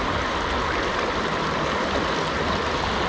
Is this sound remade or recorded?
recorded